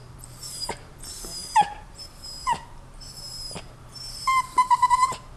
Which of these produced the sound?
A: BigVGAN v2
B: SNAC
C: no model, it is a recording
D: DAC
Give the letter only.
A